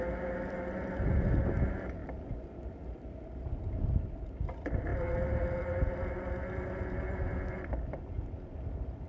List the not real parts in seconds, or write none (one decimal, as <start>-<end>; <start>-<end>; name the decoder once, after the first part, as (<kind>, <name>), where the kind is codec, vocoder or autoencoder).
none